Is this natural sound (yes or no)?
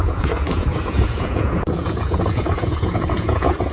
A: no